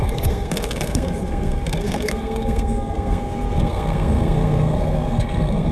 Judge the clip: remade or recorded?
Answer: remade